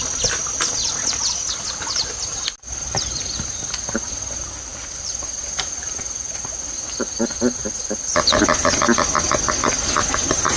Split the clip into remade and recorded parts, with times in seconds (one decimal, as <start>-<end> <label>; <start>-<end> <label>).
0.0-4.7 recorded; 4.7-5.9 remade; 5.9-10.6 recorded